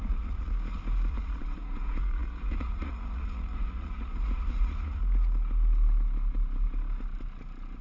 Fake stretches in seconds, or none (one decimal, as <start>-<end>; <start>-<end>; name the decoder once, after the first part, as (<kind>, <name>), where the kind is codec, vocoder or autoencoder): 0.0-0.5 (vocoder, Vocos); 1.1-5.0